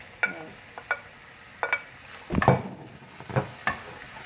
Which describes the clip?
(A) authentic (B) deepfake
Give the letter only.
A